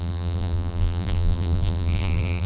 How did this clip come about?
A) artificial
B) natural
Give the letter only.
A